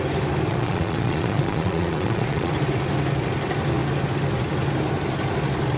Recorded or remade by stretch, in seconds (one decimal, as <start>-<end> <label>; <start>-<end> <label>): 0.0-0.5 recorded; 0.5-2.5 remade; 2.5-5.8 recorded